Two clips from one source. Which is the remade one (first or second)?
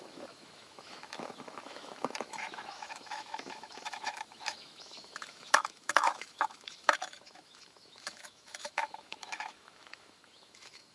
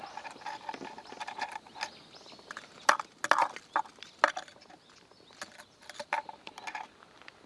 first